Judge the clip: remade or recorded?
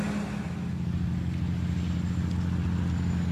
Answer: recorded